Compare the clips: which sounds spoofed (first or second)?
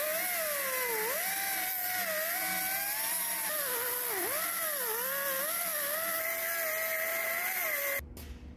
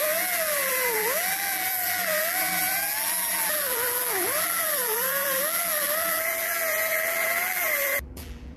second